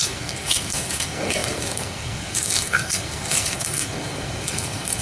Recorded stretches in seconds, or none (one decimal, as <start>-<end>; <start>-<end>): none